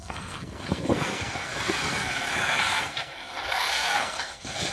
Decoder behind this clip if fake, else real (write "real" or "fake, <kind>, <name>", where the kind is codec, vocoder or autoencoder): fake, codec, SNAC